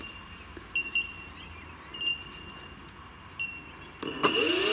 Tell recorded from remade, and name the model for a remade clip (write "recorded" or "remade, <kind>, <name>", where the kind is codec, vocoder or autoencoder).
recorded